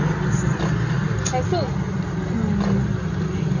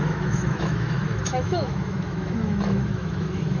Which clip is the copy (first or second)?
second